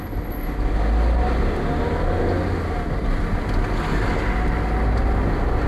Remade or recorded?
recorded